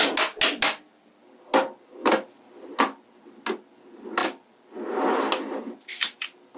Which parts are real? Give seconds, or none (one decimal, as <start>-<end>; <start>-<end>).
0.0-6.6

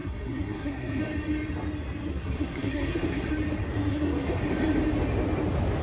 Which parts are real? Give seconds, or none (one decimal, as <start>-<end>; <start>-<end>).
1.0-2.1; 3.3-3.9; 4.4-5.8